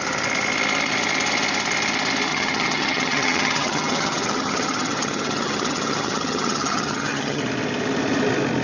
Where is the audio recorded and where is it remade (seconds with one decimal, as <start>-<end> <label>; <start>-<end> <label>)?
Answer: 0.0-2.3 recorded; 2.3-7.4 remade; 7.4-8.6 recorded